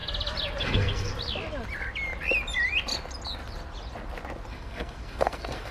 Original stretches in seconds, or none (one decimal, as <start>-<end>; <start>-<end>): 0.0-0.6; 1.1-4.5